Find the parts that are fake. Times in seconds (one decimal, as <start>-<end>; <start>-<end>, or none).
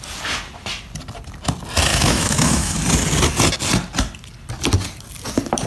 1.9-2.7